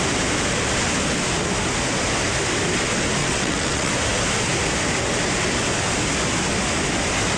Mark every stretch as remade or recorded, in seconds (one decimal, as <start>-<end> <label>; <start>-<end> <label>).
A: 0.0-3.2 recorded; 3.2-3.9 remade; 3.9-7.4 recorded